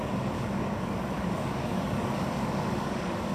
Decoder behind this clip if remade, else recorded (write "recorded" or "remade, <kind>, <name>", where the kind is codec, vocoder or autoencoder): remade, codec, DAC